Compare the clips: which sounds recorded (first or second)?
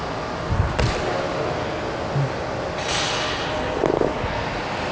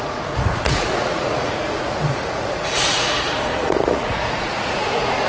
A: first